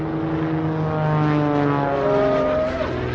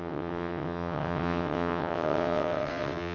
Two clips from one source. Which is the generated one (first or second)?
second